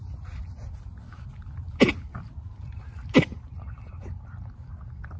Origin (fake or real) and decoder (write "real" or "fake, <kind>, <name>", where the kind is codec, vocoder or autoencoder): real